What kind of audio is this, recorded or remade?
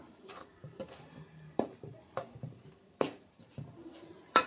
remade